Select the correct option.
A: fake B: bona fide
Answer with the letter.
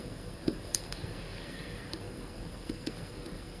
A